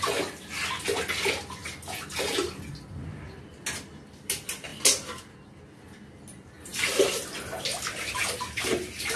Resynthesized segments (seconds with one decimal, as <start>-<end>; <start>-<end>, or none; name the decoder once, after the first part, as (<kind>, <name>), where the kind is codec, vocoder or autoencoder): none